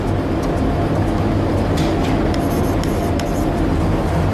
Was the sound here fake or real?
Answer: real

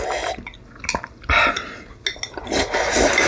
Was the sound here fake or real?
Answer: real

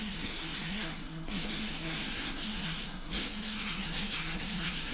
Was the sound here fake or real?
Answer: fake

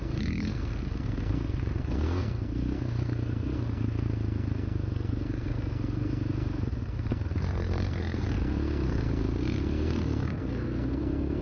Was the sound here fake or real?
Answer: fake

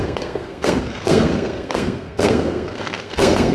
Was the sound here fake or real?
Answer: fake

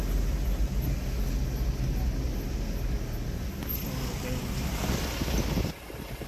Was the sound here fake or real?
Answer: real